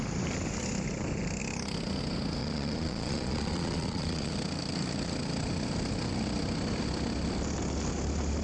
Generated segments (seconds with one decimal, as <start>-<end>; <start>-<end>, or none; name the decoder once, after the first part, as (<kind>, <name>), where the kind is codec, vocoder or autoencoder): 2.4-4.3 (vocoder, Vocos)